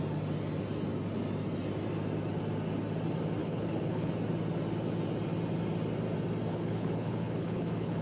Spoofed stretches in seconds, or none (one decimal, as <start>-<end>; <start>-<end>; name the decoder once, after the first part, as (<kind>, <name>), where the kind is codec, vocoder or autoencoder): 3.4-4.1 (codec, HILCodec); 6.5-8.0